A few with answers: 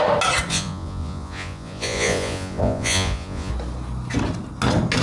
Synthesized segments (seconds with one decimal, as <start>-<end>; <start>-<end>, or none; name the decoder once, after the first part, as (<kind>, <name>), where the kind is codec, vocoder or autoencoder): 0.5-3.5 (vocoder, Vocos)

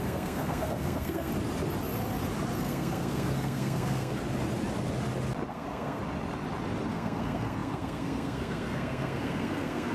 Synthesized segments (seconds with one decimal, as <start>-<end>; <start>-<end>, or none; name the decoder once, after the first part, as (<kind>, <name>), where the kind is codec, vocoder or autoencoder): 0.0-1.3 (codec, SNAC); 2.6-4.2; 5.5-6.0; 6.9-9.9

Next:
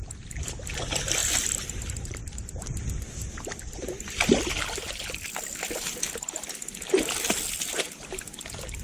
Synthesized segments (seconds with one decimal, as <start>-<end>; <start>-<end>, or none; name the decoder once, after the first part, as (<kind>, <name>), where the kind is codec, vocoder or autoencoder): none